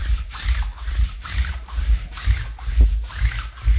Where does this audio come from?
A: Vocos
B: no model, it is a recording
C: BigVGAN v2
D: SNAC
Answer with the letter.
B